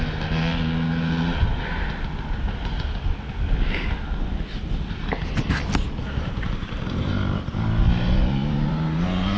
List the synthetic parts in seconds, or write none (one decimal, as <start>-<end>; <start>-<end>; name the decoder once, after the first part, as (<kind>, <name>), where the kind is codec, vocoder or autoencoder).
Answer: 6.0-7.1 (vocoder, BigVGAN v2)